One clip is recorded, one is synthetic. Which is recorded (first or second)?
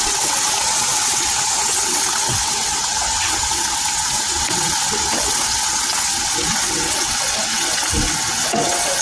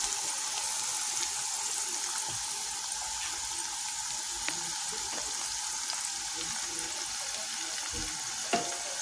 second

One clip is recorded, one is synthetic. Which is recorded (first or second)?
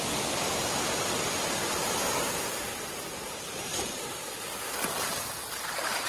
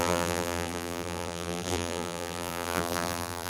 first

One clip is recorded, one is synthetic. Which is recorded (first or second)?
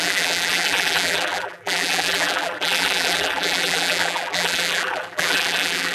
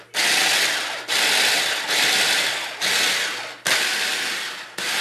second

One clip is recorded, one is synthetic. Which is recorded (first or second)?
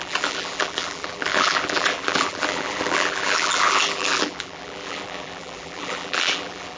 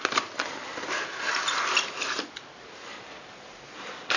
second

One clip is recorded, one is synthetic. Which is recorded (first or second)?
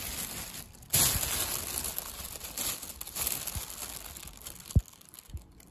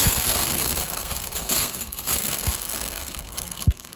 first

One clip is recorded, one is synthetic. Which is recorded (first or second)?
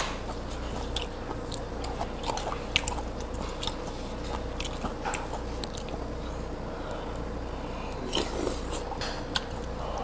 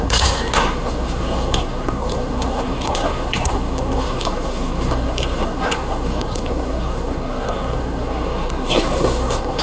first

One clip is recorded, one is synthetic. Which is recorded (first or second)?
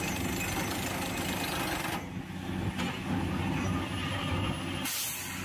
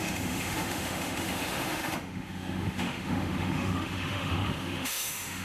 first